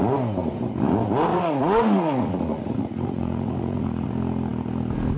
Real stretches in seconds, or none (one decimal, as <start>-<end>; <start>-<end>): 0.0-1.3; 4.1-5.2